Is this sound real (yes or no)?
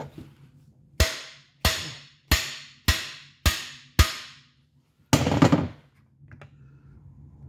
yes